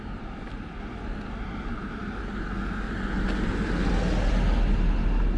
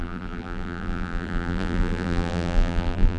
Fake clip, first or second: second